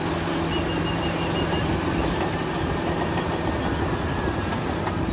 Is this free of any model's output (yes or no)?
yes